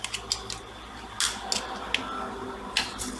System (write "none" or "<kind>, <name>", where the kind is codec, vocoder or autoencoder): none